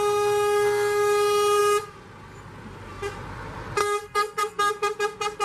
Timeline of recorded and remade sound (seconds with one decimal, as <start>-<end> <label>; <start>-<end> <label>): 0.0-3.8 recorded; 3.8-4.7 remade; 4.7-5.4 recorded